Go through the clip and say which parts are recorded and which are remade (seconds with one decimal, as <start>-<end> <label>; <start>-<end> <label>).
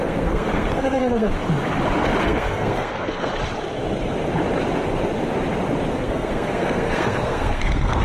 0.0-1.3 remade; 1.3-2.2 recorded; 2.2-3.3 remade; 3.3-6.0 recorded; 6.0-8.0 remade